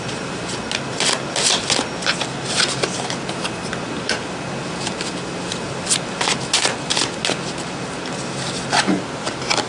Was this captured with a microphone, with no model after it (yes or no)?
yes